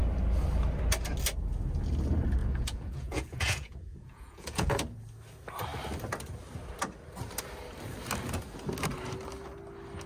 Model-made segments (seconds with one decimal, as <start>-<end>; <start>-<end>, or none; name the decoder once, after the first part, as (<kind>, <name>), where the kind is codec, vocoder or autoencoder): 2.4-4.7 (vocoder, Vocos)